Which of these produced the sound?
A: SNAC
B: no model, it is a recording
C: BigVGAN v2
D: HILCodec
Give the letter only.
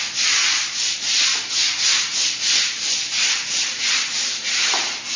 B